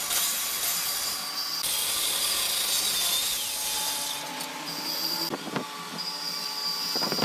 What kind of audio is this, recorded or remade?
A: recorded